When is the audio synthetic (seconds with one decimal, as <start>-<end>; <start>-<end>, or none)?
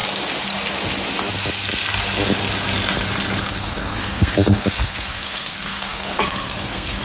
3.4-7.0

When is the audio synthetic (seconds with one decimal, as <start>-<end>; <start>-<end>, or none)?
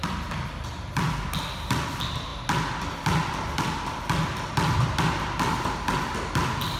none